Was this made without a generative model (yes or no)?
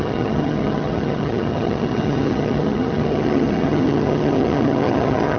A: no